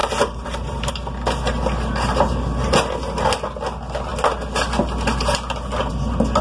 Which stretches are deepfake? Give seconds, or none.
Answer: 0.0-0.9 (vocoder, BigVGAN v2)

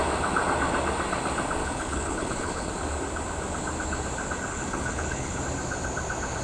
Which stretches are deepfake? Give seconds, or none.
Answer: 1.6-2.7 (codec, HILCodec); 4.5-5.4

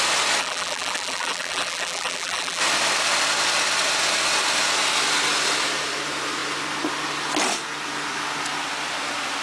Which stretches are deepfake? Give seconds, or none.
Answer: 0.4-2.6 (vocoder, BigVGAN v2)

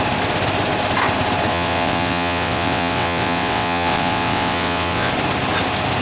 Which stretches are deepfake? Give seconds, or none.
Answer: 1.5-5.1 (vocoder, WaveNeXt)

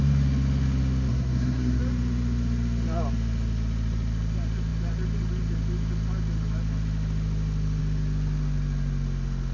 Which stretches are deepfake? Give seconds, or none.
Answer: 1.1-1.8 (codec, SNAC)

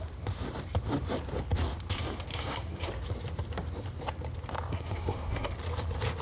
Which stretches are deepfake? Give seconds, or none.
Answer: 2.3-2.9 (codec, SNAC); 4.7-5.5

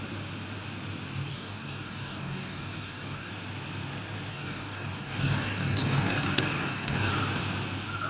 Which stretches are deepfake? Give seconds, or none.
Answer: 1.3-3.3 (codec, DAC); 4.3-7.1